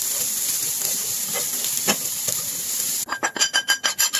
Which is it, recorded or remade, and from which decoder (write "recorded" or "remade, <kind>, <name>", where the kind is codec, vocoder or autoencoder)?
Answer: remade, vocoder, BigVGAN v2